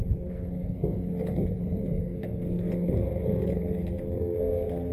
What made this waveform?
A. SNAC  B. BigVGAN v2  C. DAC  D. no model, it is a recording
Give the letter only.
A